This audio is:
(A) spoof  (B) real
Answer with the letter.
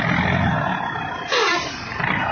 B